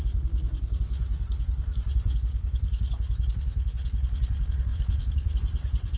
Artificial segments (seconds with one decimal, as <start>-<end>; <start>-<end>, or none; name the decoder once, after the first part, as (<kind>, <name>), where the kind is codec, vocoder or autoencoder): 4.7-6.0 (vocoder, BigVGAN v2)